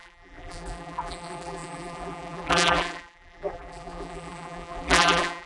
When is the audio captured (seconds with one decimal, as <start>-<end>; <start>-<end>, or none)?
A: none